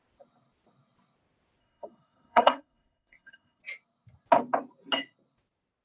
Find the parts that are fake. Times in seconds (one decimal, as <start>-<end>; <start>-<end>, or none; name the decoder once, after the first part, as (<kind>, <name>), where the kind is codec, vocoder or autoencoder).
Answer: 1.6-3.6 (codec, SNAC)